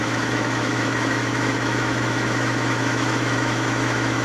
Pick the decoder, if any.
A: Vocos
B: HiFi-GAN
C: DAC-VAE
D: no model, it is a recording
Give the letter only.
C